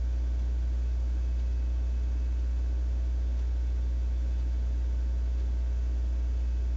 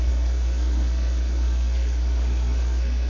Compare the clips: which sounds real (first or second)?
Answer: first